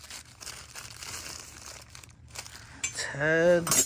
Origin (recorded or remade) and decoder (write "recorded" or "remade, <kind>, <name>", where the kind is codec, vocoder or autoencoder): recorded